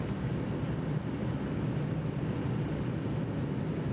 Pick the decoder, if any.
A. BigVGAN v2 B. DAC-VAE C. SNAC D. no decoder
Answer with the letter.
D